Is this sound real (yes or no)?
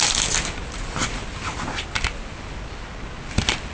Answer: yes